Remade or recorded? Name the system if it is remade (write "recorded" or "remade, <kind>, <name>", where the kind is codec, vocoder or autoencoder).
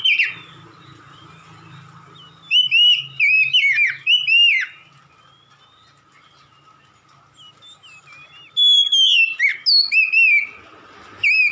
recorded